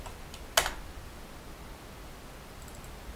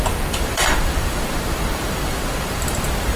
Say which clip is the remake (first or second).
second